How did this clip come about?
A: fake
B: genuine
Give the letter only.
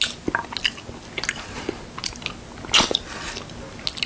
B